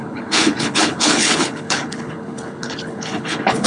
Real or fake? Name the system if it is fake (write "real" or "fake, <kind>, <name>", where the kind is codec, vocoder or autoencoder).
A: fake, codec, HILCodec